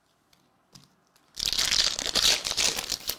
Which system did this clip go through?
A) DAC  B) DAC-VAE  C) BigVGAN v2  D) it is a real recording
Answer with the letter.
D